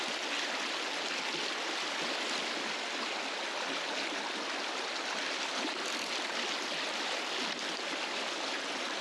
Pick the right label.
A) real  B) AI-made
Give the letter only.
A